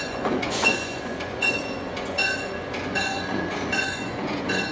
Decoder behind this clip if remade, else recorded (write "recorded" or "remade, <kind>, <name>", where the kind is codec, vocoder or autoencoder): remade, vocoder, Vocos